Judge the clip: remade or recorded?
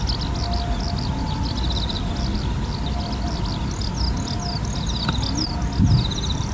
recorded